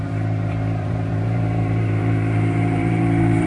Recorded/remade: remade